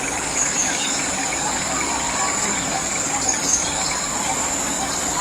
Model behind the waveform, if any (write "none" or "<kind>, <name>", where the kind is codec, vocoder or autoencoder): codec, DAC